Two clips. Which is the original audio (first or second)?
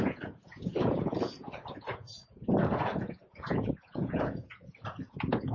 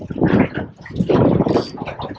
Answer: second